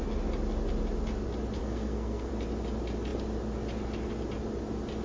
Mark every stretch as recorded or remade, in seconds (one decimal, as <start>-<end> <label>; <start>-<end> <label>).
0.0-1.6 recorded; 1.6-2.3 remade; 2.3-5.0 recorded